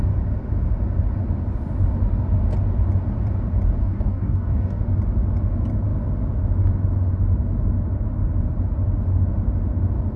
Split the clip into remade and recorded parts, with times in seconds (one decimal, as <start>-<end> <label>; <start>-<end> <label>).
0.0-3.8 recorded; 3.8-4.8 remade; 4.8-10.2 recorded